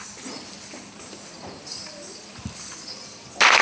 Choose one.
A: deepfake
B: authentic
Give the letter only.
A